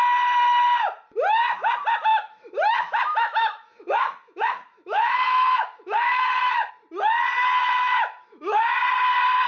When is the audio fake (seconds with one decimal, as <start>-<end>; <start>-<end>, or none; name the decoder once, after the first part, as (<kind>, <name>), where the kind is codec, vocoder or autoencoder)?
2.1-6.7 (autoencoder, DAC-VAE); 7.6-8.8